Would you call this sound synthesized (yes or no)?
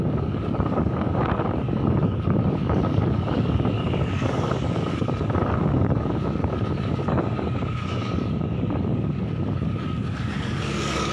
yes